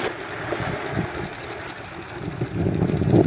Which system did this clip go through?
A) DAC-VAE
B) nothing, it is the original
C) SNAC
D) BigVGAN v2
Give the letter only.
B